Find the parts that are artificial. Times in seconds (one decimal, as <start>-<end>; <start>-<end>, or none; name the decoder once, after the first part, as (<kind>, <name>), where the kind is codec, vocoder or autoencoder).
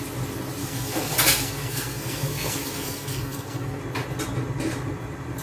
0.6-3.8 (codec, SNAC)